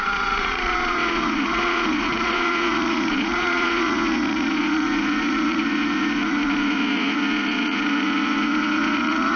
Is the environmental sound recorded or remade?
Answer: remade